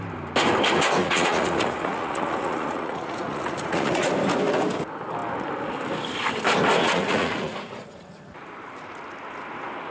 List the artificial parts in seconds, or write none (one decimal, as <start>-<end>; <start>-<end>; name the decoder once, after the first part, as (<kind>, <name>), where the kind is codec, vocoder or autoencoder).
1.0-4.1 (vocoder, Vocos); 6.8-8.2